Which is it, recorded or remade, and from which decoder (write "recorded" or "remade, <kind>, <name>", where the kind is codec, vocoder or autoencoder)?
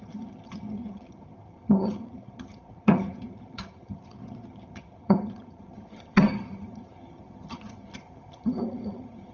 remade, vocoder, HiFi-GAN